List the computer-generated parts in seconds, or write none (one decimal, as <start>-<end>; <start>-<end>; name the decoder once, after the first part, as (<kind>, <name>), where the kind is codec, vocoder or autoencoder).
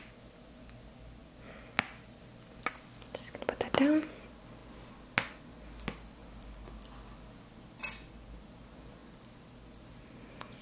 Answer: none